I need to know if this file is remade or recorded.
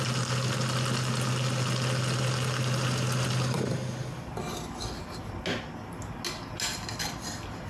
recorded